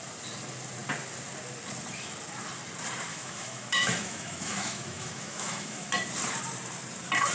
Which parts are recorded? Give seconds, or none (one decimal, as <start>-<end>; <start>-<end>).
0.0-3.1; 5.9-7.3